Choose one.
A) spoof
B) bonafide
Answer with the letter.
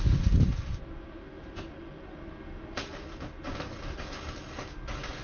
B